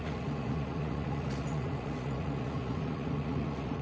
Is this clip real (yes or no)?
no